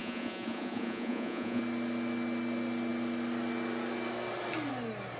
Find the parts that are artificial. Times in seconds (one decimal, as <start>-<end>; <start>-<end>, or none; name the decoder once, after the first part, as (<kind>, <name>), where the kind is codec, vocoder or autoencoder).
0.0-1.6 (vocoder, Vocos)